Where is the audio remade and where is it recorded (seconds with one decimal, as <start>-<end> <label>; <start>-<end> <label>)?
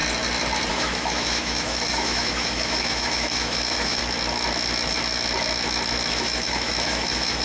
0.0-0.7 recorded; 0.7-4.0 remade; 4.0-6.1 recorded; 6.1-7.4 remade